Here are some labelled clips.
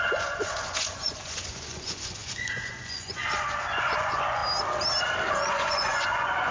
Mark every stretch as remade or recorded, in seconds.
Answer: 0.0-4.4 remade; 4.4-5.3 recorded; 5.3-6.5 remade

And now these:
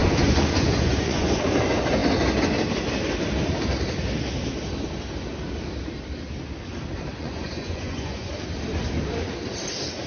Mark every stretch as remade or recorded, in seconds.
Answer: 0.0-1.4 remade; 1.4-7.1 recorded; 7.1-8.3 remade; 8.3-10.1 recorded

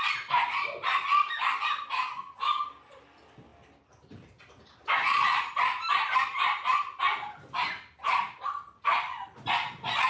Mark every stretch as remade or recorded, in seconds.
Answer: 0.0-10.1 recorded